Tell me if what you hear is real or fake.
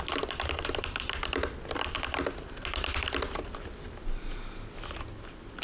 real